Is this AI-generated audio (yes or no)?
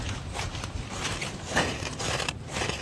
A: yes